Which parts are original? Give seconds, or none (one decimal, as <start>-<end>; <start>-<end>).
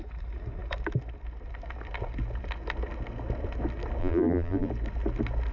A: 0.0-4.0; 4.7-5.5